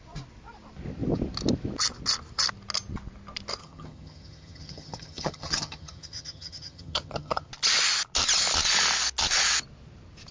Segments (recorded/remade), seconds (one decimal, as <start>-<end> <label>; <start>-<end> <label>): 0.0-3.6 recorded; 3.6-7.5 remade; 7.5-10.3 recorded